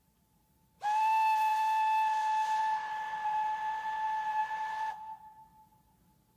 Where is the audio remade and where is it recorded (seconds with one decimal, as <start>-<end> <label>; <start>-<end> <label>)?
0.0-6.4 recorded